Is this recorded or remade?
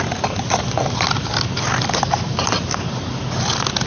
recorded